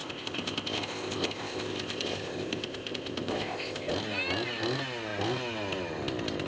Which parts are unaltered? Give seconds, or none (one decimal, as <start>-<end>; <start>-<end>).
3.9-6.5